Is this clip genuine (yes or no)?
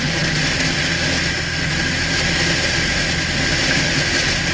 yes